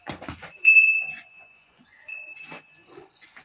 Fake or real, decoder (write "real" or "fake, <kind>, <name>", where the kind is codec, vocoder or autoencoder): fake, vocoder, Vocos